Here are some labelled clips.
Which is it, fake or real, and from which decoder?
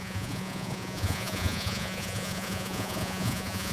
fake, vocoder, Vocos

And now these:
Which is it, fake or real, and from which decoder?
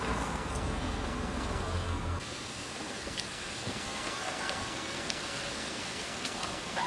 fake, codec, SNAC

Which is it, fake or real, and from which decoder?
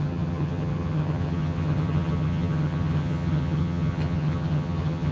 fake, vocoder, HiFi-GAN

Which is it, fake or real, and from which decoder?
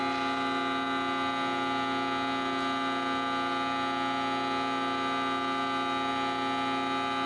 real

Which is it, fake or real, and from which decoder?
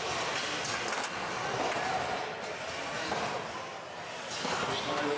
real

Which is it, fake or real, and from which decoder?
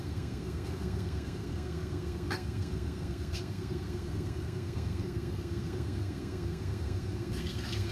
fake, codec, SNAC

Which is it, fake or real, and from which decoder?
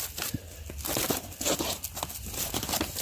real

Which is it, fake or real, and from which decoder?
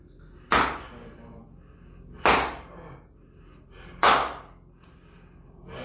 real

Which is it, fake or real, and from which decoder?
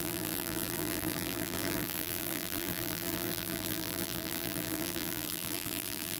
fake, vocoder, BigVGAN v2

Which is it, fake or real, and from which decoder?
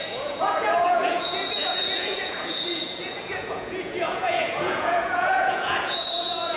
fake, vocoder, Vocos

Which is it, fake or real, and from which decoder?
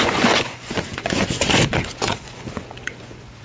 fake, vocoder, Vocos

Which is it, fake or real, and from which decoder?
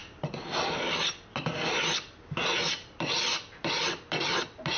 real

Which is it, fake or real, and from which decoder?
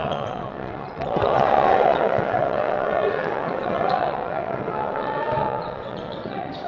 fake, vocoder, WaveNeXt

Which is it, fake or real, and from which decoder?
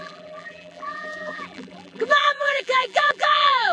fake, vocoder, BigVGAN v2